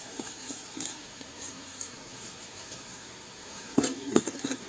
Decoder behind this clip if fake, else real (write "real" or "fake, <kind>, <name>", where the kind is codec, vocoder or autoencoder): fake, codec, SNAC